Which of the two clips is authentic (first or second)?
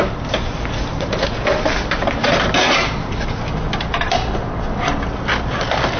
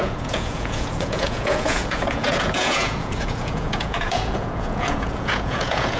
first